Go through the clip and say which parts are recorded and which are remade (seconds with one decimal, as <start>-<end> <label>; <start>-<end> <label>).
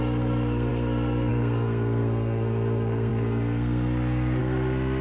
0.0-5.0 remade